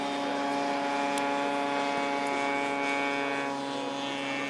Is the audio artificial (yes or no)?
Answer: no